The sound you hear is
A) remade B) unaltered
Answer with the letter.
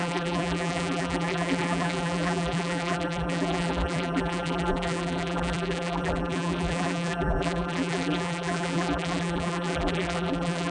A